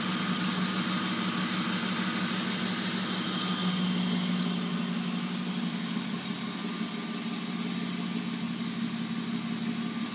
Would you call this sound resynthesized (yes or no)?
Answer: no